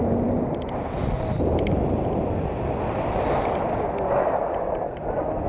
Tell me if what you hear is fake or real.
real